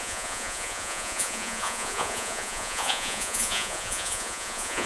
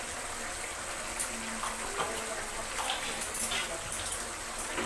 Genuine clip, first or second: second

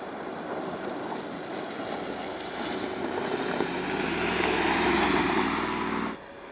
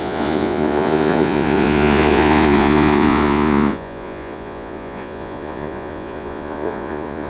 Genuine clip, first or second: first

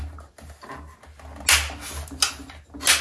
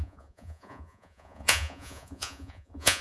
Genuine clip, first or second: first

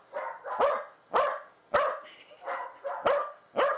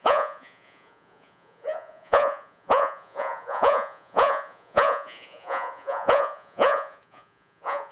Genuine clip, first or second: first